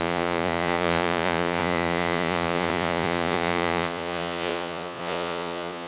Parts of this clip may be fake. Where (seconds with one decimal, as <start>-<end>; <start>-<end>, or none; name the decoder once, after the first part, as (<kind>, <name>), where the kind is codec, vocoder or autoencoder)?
0.0-5.9 (vocoder, Vocos)